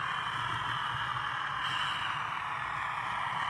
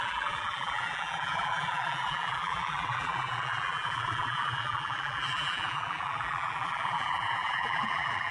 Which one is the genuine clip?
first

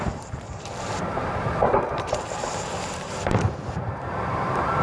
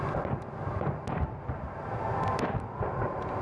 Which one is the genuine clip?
second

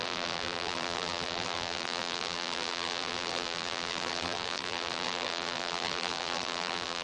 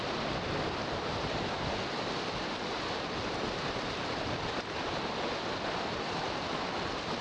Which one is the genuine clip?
second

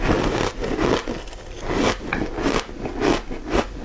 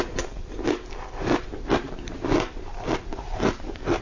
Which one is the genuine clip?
first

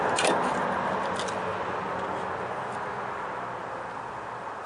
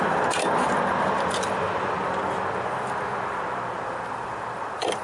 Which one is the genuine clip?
first